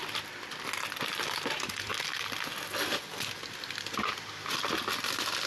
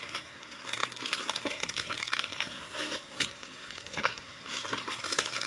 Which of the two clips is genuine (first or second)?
first